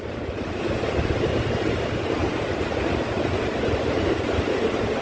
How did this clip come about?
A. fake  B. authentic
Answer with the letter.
A